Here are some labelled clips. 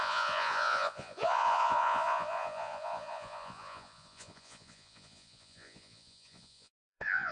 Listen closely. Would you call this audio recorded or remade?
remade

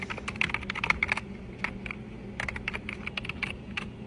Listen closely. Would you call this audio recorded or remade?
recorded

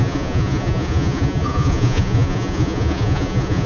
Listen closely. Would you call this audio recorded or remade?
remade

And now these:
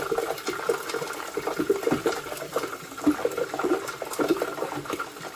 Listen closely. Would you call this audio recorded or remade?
recorded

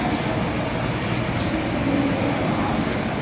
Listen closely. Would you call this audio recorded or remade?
recorded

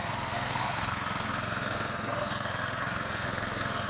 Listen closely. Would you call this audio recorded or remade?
remade